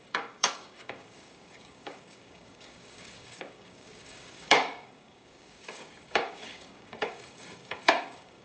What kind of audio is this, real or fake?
fake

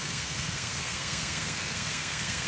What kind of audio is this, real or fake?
fake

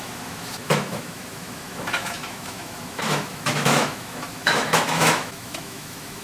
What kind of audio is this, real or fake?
fake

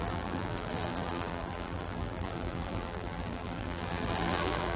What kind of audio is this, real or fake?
fake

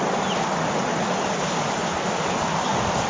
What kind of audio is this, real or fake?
real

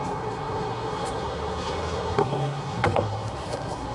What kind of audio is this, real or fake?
fake